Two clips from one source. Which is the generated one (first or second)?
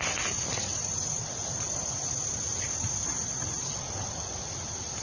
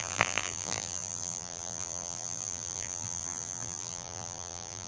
second